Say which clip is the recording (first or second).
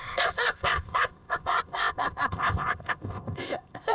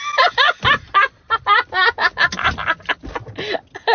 second